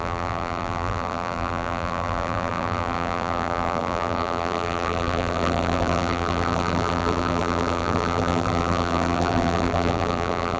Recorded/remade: remade